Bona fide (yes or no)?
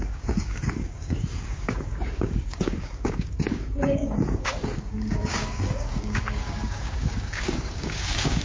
no